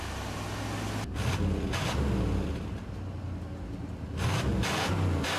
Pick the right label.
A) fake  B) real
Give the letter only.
B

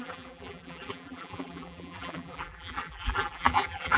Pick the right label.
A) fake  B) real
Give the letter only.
A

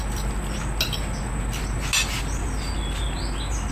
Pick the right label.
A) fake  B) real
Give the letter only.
B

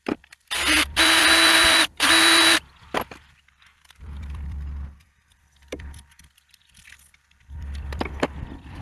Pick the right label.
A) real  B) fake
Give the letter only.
B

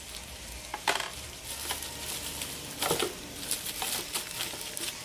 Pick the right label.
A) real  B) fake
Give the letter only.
A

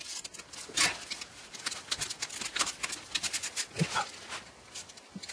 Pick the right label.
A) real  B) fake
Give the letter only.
A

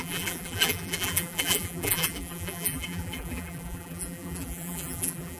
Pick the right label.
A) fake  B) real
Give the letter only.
A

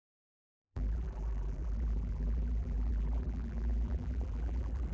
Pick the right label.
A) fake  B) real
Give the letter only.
A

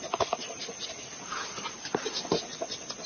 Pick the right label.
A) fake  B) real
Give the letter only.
B